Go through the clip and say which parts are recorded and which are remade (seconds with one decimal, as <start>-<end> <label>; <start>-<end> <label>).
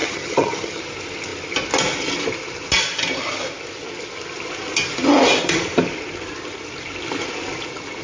0.0-0.8 remade; 0.8-8.0 recorded